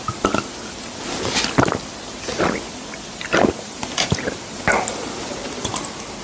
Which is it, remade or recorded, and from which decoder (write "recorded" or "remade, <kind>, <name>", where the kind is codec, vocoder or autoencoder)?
recorded